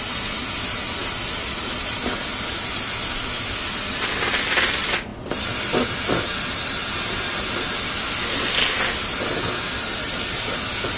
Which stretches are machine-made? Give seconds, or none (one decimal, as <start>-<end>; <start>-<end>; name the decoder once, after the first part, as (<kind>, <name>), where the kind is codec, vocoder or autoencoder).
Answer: 5.1-7.9 (vocoder, BigVGAN v2)